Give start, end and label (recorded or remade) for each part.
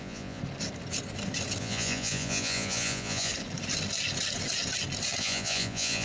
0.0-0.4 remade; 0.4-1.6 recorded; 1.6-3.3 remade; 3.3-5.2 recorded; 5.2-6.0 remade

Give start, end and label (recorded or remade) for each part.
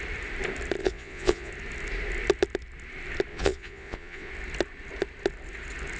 0.0-0.8 recorded; 0.8-1.5 remade; 1.5-3.3 recorded; 3.3-4.3 remade; 4.3-6.0 recorded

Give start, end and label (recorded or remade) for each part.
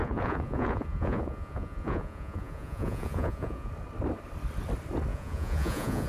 0.0-3.7 remade; 3.7-5.1 recorded; 5.1-6.1 remade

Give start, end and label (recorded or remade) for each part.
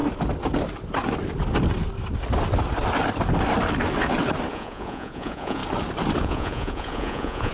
0.0-4.5 recorded; 4.5-5.6 remade; 5.6-6.2 recorded; 6.2-7.5 remade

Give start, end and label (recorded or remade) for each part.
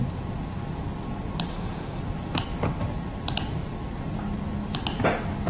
0.0-1.5 recorded; 1.5-2.0 remade; 2.0-5.5 recorded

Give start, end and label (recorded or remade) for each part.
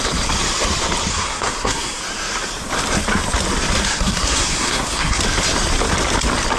0.0-1.1 recorded; 1.1-2.0 remade; 2.0-3.9 recorded; 3.9-5.2 remade; 5.2-6.6 recorded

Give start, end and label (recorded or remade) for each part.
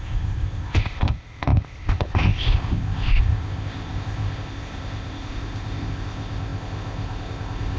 0.0-7.8 remade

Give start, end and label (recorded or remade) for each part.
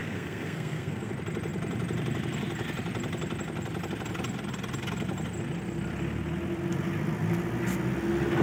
0.0-1.1 remade; 1.1-8.4 recorded